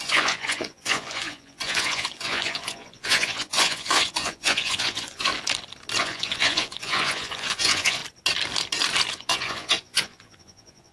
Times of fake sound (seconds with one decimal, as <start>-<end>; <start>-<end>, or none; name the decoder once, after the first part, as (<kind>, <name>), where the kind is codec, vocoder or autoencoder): 0.0-5.3 (vocoder, Vocos); 6.0-8.0; 9.1-10.9